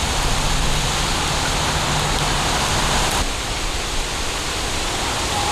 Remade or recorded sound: recorded